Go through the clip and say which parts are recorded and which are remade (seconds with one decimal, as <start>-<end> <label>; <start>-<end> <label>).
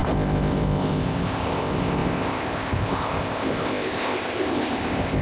0.0-5.2 remade